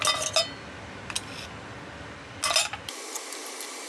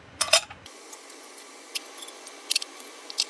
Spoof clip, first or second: second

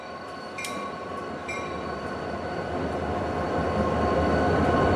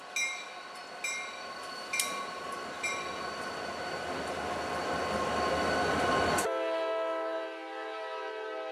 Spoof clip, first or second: first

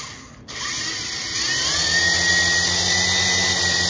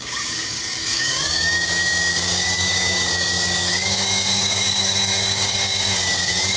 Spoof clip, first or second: second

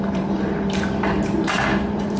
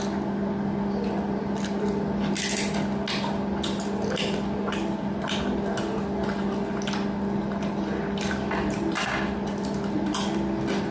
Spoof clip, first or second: first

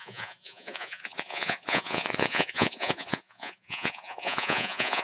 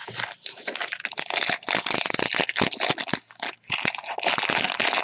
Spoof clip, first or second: first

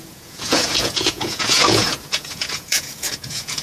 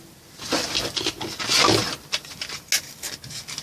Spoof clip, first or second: first